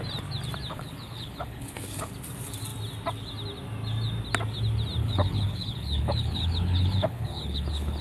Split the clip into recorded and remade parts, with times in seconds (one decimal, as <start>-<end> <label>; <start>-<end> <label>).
0.0-0.7 recorded; 0.7-2.1 remade; 2.1-5.0 recorded; 5.0-8.0 remade